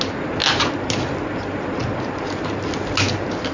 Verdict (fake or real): real